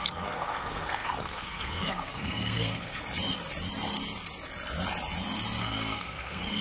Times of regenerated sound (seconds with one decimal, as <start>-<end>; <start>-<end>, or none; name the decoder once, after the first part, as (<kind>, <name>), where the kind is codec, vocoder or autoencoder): 0.0-3.0 (codec, SNAC); 5.6-6.6

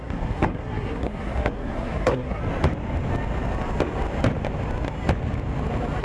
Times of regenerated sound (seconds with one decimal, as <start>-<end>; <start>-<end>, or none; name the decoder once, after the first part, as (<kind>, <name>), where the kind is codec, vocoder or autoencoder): 0.0-2.4 (codec, SNAC)

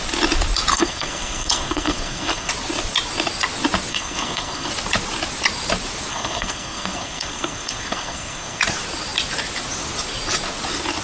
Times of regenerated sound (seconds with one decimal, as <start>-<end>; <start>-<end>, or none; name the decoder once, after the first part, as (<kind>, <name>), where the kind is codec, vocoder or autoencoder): 0.7-2.5 (codec, SNAC); 3.9-4.7; 6.1-8.6

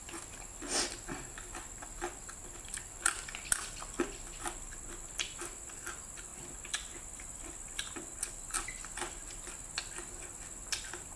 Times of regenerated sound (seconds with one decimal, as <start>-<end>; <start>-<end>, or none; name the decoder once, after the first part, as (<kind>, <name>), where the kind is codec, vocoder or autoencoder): none

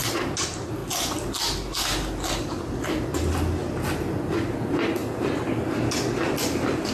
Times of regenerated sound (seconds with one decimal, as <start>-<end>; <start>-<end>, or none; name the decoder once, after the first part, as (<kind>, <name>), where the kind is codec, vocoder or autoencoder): none

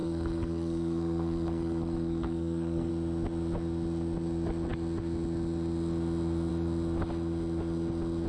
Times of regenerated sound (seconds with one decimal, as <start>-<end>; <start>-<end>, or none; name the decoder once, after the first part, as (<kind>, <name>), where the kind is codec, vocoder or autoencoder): 0.0-2.9 (codec, SNAC)

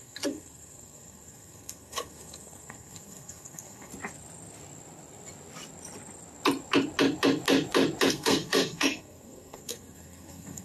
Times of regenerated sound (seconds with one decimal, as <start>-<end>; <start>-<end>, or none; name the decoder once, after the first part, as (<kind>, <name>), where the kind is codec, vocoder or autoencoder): 0.0-3.9 (codec, SNAC); 8.1-10.6

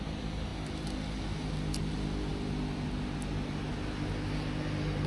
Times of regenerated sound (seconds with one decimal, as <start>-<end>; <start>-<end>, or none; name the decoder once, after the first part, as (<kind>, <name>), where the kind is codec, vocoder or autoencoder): none